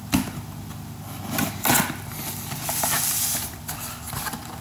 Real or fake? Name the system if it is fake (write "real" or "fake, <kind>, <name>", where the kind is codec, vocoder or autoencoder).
fake, vocoder, BigVGAN v2